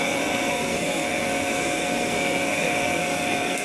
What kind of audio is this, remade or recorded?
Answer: remade